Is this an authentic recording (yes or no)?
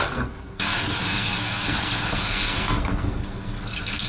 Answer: no